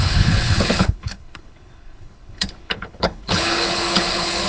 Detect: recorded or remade remade